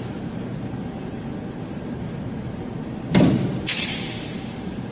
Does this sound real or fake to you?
fake